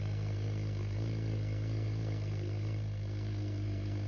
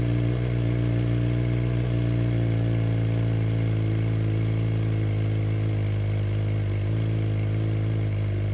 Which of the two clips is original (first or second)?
second